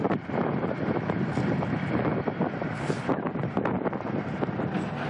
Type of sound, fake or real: real